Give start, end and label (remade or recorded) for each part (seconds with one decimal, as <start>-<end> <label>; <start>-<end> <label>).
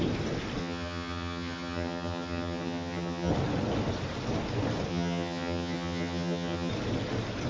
0.0-0.6 recorded; 0.6-3.3 remade; 3.3-4.9 recorded; 4.9-6.7 remade; 6.7-7.5 recorded